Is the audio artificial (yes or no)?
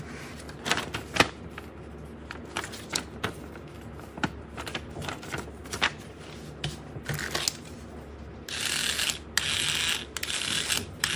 no